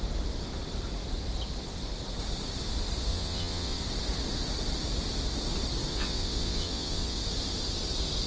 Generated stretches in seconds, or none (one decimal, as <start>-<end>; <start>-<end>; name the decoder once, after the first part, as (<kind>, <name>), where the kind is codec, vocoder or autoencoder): 3.1-3.8 (vocoder, WaveNeXt); 5.9-7.2